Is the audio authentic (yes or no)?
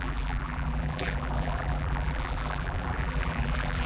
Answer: no